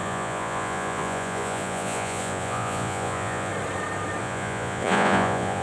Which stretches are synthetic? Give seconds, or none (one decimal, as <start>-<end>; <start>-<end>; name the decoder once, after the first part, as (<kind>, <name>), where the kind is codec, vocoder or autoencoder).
0.0-3.5 (vocoder, Vocos); 4.2-5.6